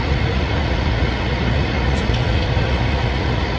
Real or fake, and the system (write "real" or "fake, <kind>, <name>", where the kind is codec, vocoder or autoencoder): fake, vocoder, Vocos